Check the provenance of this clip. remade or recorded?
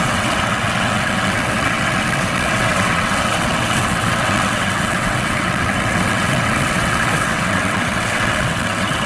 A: remade